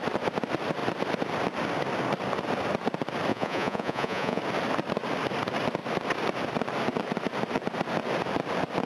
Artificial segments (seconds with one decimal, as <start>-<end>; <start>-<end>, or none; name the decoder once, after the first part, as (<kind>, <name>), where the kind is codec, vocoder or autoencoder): 3.3-4.4 (vocoder, Vocos)